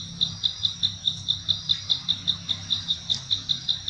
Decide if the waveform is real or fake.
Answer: real